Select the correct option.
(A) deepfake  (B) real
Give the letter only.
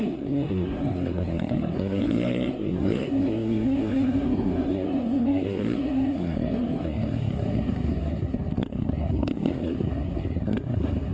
A